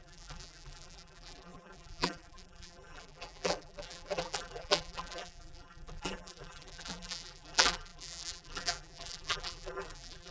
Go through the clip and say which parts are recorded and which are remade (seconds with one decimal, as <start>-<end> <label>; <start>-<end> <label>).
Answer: 0.0-10.3 remade